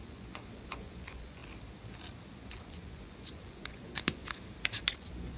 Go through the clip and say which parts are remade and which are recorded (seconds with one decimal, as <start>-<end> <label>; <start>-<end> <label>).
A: 0.0-1.4 remade; 1.4-2.4 recorded; 2.4-4.2 remade; 4.2-4.9 recorded; 4.9-5.4 remade